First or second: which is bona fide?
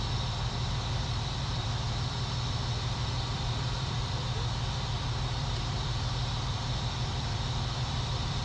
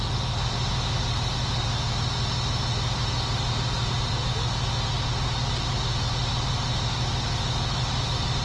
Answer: second